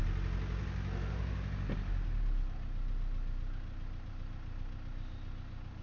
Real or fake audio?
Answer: real